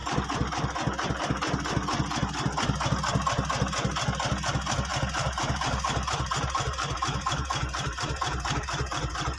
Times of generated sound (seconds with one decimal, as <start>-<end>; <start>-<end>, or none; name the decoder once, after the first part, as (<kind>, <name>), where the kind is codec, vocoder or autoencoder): 4.9-9.4 (vocoder, BigVGAN v2)